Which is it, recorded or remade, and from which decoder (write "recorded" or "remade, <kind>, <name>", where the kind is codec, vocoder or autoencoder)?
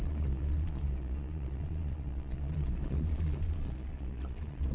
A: remade, vocoder, Vocos